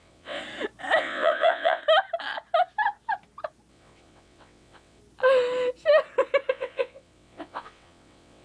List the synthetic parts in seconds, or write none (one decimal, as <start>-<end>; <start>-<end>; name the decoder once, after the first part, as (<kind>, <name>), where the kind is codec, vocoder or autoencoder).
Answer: 0.0-0.4 (vocoder, WaveNeXt); 1.0-1.8; 3.7-5.0; 6.5-8.4